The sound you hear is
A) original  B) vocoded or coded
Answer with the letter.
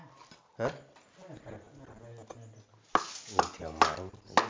A